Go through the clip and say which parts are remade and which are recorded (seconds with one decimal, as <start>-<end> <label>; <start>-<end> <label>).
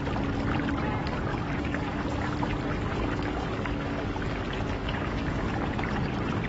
0.0-1.3 recorded; 1.3-2.0 remade; 2.0-2.9 recorded; 2.9-5.5 remade; 5.5-6.5 recorded